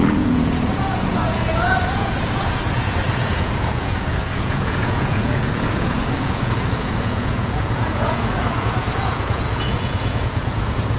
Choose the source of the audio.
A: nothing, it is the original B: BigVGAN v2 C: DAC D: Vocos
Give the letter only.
D